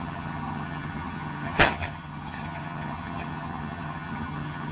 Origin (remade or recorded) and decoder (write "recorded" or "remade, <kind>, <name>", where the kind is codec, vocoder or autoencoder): remade, vocoder, HiFi-GAN